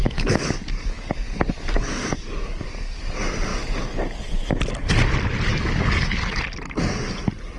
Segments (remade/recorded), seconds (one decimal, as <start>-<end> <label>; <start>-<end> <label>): 0.0-3.0 remade; 3.0-5.5 recorded; 5.5-6.4 remade; 6.4-7.6 recorded

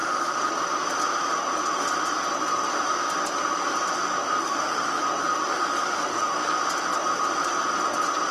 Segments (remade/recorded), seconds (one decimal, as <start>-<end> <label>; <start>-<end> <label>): 0.0-0.5 remade; 0.5-4.4 recorded; 4.4-5.0 remade; 5.0-5.5 recorded; 5.5-6.2 remade; 6.2-8.3 recorded

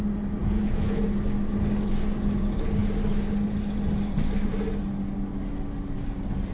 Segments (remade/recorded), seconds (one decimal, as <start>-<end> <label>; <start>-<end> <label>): 0.0-0.4 recorded; 0.4-1.0 remade; 1.0-6.5 recorded

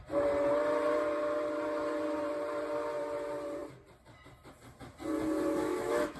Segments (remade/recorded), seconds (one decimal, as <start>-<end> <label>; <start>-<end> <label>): 0.0-5.6 recorded; 5.6-6.2 remade

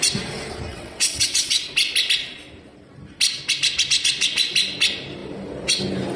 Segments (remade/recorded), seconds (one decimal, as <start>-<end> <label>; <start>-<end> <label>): 0.0-0.7 recorded; 0.7-1.6 remade; 1.6-6.2 recorded

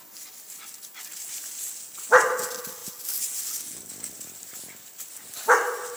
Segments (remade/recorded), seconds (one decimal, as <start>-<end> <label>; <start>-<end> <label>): 0.0-6.0 recorded

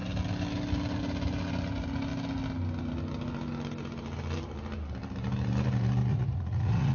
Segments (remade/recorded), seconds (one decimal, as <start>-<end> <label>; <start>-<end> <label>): 0.0-6.1 recorded; 6.1-6.9 remade